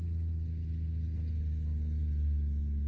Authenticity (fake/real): real